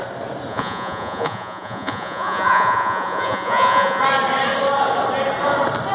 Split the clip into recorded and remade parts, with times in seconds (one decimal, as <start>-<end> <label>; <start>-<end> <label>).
0.0-0.5 recorded; 0.5-4.0 remade; 4.0-5.9 recorded

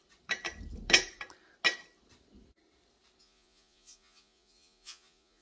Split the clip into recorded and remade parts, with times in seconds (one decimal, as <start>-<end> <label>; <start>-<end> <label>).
0.0-3.2 recorded; 3.2-5.4 remade

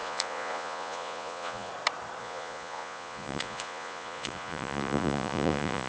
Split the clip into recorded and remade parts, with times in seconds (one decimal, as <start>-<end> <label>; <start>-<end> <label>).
0.0-1.7 remade; 1.7-2.2 recorded; 2.2-5.9 remade

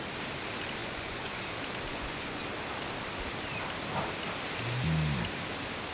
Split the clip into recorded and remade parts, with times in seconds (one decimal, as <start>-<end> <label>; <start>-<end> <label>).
0.0-0.8 recorded; 0.8-1.4 remade; 1.4-1.9 recorded; 1.9-2.4 remade; 2.4-5.9 recorded

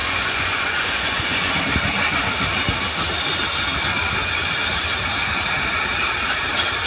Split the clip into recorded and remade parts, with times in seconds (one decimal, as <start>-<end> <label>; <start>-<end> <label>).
0.0-1.5 remade; 1.5-6.9 recorded

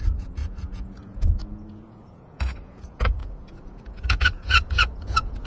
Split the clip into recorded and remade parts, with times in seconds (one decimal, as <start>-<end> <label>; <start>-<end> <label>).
0.0-5.5 remade